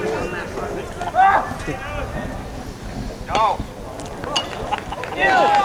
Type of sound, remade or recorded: recorded